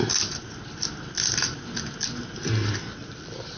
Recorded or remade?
recorded